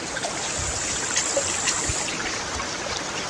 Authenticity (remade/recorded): recorded